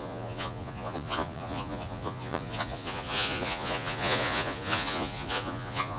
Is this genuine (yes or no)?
no